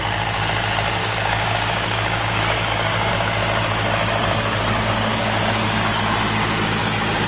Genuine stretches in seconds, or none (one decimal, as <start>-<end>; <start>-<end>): 0.0-1.0; 3.1-4.2; 6.0-7.3